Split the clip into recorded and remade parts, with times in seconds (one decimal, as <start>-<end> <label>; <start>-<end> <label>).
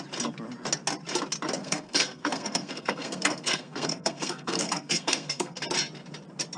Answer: 0.0-1.6 recorded; 1.6-5.6 remade; 5.6-6.6 recorded